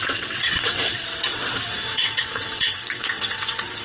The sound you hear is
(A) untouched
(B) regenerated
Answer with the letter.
B